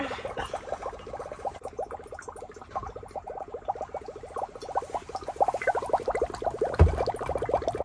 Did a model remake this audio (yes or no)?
no